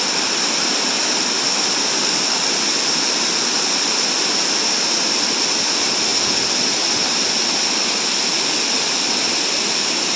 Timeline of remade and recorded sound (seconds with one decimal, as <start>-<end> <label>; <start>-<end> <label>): 0.0-10.2 recorded